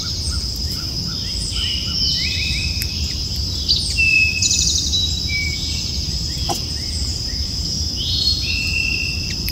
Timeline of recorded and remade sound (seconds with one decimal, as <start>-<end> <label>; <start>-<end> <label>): 0.0-9.5 remade